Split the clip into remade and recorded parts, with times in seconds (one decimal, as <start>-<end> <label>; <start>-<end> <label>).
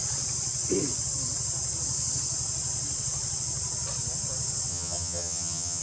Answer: 0.0-4.7 recorded; 4.7-5.8 remade